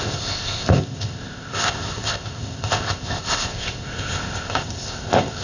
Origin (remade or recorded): remade